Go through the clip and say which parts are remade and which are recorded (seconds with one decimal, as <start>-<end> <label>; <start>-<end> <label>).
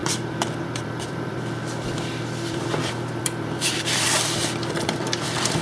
0.0-5.6 remade